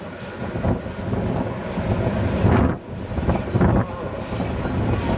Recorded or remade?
recorded